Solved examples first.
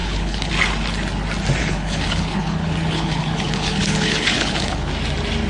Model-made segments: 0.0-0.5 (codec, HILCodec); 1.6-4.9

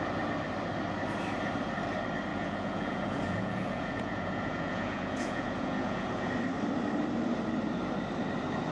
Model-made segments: 2.3-6.3 (vocoder, Vocos)